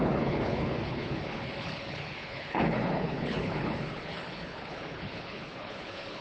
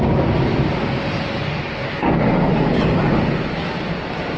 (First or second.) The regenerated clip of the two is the first